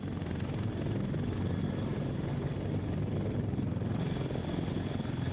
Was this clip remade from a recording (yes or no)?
no